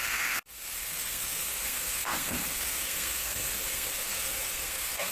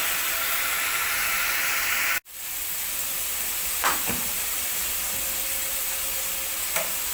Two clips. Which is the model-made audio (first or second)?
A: first